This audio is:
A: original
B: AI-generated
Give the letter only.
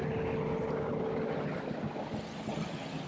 A